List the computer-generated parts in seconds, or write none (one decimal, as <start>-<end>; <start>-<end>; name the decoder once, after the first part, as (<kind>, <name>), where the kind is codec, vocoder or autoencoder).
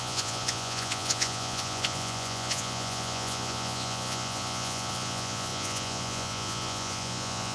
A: 0.0-7.5 (vocoder, Vocos)